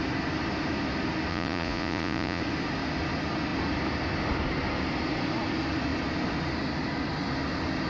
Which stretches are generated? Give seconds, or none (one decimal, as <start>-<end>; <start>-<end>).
1.3-2.4